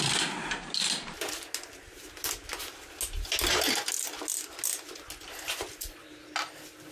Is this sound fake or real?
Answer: real